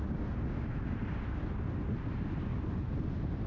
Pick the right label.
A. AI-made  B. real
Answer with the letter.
B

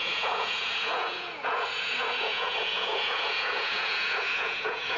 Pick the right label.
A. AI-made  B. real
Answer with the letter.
A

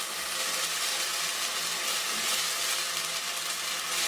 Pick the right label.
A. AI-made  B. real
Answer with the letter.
B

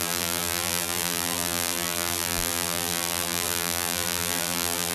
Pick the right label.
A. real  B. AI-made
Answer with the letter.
B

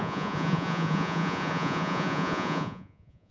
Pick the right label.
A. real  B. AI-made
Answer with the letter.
B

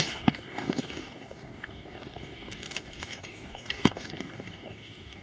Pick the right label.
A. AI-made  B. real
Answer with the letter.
A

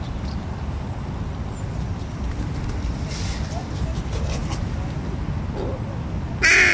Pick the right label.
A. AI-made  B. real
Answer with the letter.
B